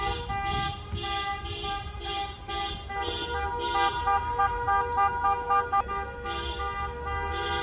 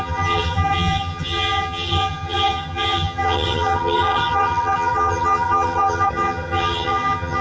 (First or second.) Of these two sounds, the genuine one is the first